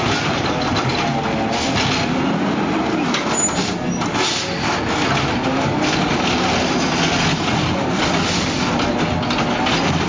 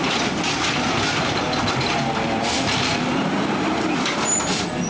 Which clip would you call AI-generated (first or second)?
second